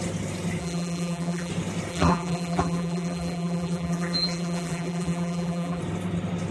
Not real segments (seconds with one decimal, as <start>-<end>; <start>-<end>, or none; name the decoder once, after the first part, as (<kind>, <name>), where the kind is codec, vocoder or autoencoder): 0.6-1.5 (vocoder, BigVGAN v2); 1.9-5.8